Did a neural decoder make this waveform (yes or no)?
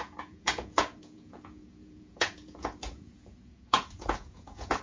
yes